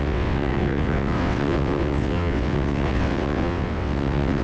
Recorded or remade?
remade